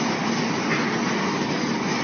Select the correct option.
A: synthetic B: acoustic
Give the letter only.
B